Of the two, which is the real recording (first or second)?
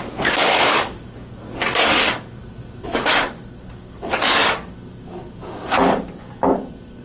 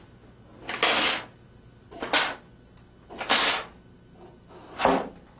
second